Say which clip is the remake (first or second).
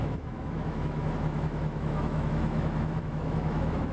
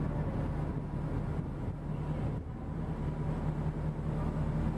first